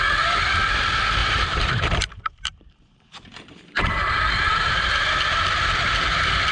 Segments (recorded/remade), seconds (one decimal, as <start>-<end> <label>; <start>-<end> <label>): 0.0-1.2 recorded; 1.2-5.1 remade; 5.1-6.5 recorded